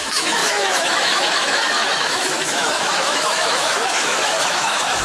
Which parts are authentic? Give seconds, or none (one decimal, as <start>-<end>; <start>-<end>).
none

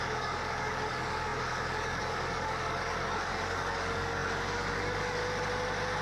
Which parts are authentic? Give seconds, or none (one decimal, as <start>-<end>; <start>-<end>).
5.2-6.0

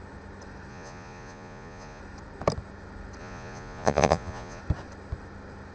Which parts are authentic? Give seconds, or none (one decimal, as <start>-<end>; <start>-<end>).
0.0-0.7; 2.0-3.2; 4.6-5.7